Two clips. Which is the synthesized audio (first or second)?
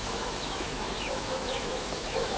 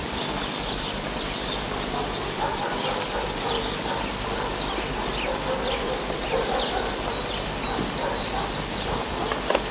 first